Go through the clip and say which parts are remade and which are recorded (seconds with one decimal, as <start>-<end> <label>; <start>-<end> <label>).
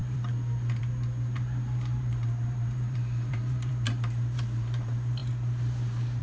0.0-6.2 remade